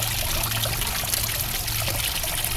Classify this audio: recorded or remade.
recorded